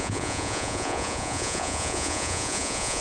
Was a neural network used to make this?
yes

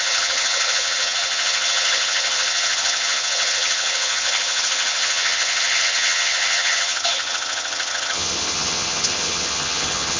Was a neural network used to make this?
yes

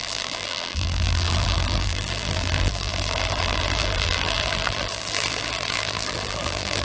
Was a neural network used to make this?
yes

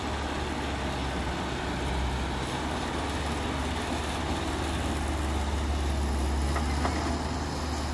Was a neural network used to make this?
no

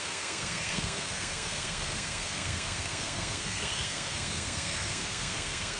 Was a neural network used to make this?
yes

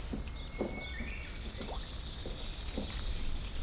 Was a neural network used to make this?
no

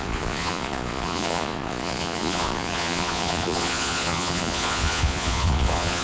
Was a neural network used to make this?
yes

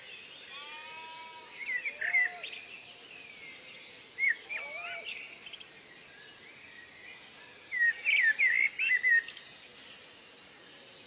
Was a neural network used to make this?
no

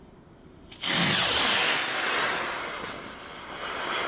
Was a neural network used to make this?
no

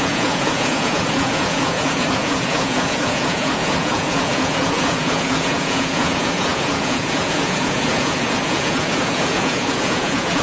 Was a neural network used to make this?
yes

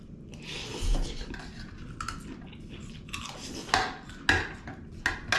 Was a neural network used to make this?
no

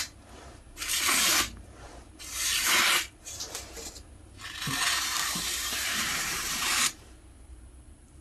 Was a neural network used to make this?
yes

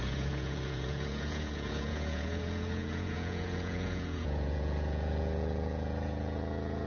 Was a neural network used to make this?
yes